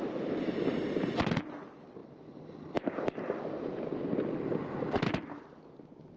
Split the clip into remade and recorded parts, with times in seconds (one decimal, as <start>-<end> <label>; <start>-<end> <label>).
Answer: 0.0-6.2 recorded